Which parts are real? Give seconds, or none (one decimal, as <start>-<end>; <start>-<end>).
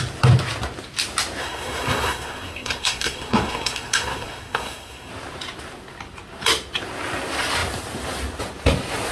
0.0-1.4; 5.1-9.1